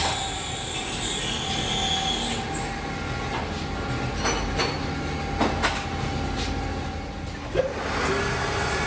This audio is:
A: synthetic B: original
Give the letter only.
B